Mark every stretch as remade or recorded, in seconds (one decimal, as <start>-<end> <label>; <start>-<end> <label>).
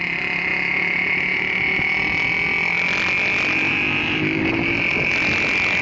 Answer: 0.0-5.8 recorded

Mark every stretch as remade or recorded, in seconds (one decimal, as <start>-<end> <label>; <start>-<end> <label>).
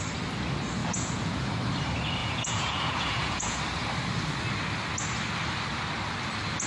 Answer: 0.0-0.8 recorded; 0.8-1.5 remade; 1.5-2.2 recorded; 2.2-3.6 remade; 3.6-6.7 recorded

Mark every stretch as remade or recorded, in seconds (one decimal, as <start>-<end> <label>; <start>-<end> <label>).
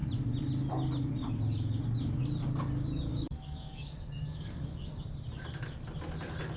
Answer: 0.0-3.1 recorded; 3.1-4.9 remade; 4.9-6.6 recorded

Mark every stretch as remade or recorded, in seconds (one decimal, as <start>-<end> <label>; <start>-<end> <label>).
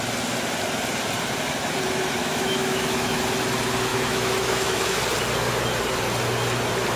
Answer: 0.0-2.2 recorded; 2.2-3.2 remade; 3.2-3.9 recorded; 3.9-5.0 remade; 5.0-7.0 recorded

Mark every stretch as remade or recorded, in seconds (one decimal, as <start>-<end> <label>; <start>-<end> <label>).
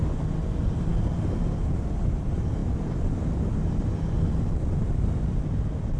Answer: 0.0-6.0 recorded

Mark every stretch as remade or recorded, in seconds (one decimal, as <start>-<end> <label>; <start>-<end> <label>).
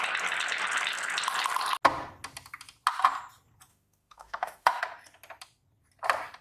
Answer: 0.0-3.7 recorded; 3.7-4.8 remade; 4.8-6.4 recorded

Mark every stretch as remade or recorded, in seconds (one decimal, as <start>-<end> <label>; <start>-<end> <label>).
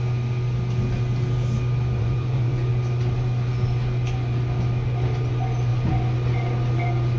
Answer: 0.0-2.0 recorded; 2.0-2.7 remade; 2.7-7.2 recorded